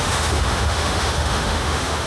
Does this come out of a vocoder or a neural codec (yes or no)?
yes